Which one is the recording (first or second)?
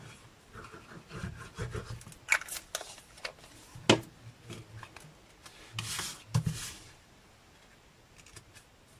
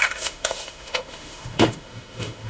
first